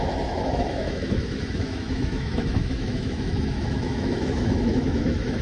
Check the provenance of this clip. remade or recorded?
remade